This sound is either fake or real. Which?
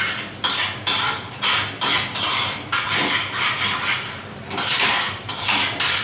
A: fake